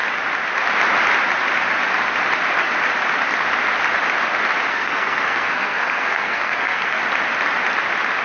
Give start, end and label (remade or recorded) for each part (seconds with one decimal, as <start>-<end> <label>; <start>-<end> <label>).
0.0-4.7 recorded; 4.7-7.0 remade; 7.0-8.2 recorded